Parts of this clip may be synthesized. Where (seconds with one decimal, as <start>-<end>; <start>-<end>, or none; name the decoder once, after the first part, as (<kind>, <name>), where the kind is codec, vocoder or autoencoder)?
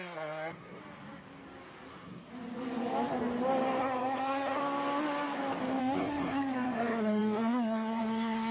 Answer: 0.0-0.8 (codec, SNAC); 1.9-2.3; 3.8-4.6; 5.8-8.5